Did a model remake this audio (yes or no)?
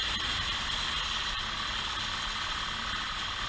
no